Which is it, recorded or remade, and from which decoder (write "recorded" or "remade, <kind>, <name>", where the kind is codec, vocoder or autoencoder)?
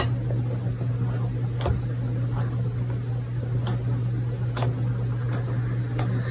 recorded